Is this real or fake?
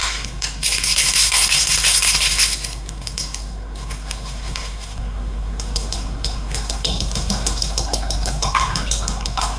fake